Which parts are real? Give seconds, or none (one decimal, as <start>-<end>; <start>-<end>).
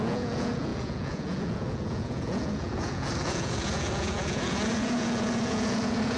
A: none